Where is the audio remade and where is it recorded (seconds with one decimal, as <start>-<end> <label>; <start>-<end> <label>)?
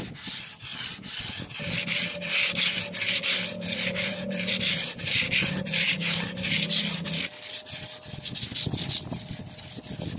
0.0-10.2 recorded